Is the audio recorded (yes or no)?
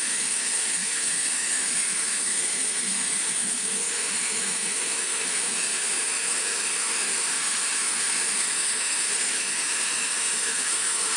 no